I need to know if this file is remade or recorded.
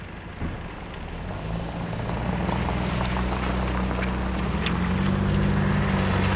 recorded